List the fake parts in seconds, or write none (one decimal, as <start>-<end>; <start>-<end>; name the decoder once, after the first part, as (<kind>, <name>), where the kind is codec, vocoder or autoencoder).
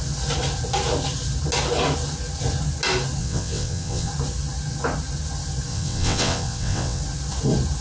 3.2-4.1 (vocoder, WaveNeXt); 5.7-7.0